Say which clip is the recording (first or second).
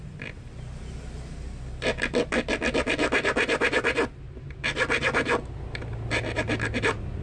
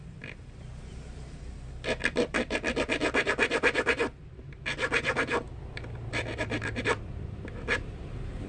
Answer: first